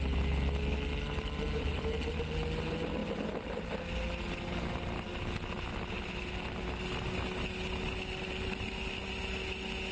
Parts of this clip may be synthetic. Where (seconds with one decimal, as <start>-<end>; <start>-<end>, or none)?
none

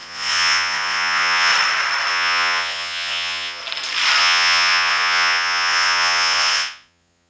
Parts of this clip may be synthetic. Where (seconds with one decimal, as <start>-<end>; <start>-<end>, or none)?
0.0-1.5; 2.1-3.6; 4.2-7.3